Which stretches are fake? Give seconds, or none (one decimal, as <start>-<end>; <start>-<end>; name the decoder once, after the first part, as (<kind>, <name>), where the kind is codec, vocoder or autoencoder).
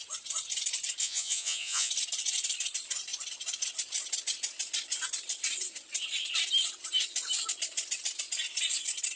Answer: 1.0-1.9 (vocoder, Vocos)